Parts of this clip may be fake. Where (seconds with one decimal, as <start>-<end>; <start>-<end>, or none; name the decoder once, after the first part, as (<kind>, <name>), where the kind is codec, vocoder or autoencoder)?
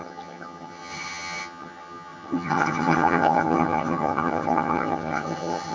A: 0.0-5.7 (vocoder, HiFi-GAN)